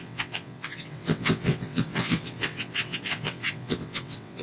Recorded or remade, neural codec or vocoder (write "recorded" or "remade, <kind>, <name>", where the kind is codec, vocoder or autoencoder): remade, vocoder, WaveNeXt